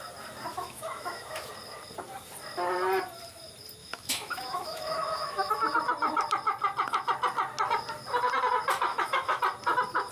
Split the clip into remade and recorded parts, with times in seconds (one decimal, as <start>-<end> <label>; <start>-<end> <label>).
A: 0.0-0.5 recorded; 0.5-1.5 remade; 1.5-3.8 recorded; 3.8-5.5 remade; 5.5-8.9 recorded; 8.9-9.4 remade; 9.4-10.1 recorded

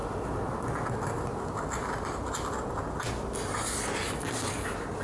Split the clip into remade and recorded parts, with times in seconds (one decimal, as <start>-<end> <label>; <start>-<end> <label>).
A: 0.0-5.0 recorded

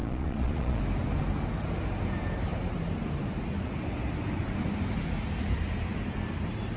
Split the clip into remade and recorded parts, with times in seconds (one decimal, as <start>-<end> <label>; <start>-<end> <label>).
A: 0.0-0.8 remade; 0.8-6.8 recorded

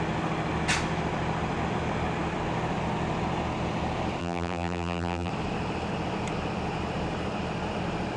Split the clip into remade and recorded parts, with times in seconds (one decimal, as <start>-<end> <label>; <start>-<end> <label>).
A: 0.0-4.2 recorded; 4.2-5.3 remade; 5.3-8.2 recorded

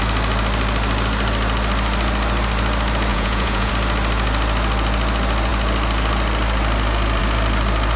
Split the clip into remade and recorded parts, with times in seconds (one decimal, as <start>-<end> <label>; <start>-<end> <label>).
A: 0.0-3.1 recorded; 3.1-3.7 remade; 3.7-8.0 recorded